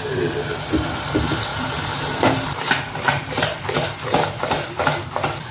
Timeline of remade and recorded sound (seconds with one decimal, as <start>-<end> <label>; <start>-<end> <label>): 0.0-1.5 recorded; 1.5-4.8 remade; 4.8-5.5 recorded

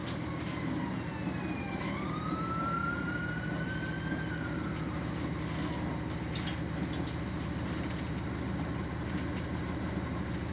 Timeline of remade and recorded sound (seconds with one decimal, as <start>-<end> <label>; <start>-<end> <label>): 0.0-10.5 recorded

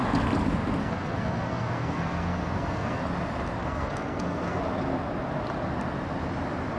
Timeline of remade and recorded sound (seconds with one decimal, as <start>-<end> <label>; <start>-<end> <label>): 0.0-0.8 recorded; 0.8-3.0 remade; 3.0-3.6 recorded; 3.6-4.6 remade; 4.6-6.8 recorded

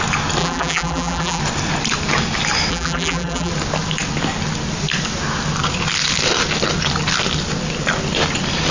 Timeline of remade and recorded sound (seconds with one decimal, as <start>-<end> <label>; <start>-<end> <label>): 0.0-0.4 recorded; 0.4-1.4 remade; 1.4-2.7 recorded; 2.7-3.5 remade; 3.5-8.7 recorded